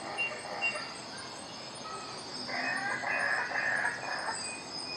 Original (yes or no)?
yes